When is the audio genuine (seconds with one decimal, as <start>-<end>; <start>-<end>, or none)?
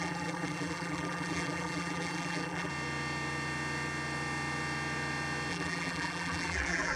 2.7-5.5